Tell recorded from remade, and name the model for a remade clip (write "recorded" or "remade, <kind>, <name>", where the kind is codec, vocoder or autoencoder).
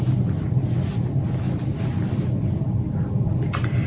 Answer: recorded